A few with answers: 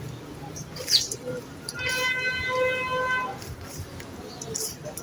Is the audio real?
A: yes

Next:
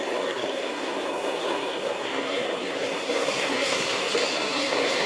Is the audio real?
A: no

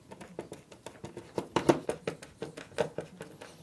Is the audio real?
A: yes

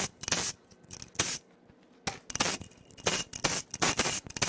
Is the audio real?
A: yes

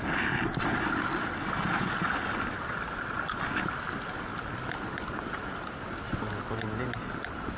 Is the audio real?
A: yes